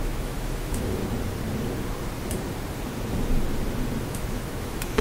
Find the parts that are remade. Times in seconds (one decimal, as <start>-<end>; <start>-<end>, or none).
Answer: 0.0-1.0; 4.0-5.0